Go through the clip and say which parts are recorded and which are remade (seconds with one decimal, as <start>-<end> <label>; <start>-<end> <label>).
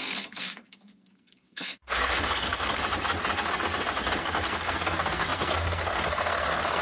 0.0-2.8 remade; 2.8-4.2 recorded; 4.2-6.8 remade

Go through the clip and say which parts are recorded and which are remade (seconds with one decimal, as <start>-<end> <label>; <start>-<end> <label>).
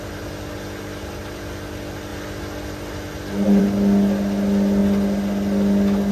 0.0-6.1 recorded